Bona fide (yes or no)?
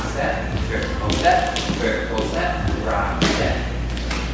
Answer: yes